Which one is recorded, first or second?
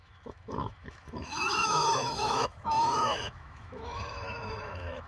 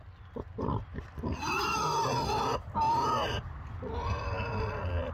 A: second